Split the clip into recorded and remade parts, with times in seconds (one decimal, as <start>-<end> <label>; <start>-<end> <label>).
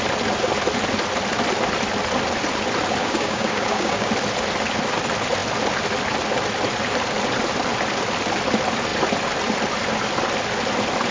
0.0-3.0 recorded; 3.0-4.1 remade; 4.1-11.1 recorded